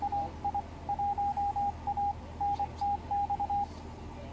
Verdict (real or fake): real